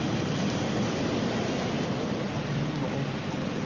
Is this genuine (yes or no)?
yes